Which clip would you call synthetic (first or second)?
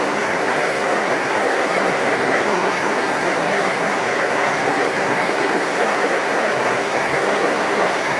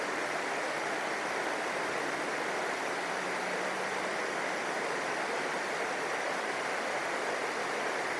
first